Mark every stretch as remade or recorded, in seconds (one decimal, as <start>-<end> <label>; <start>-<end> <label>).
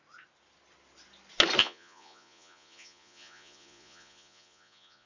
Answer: 0.0-1.6 recorded; 1.6-5.1 remade